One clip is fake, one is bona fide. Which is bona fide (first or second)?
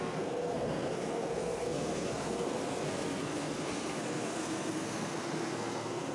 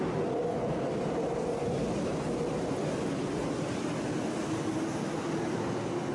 second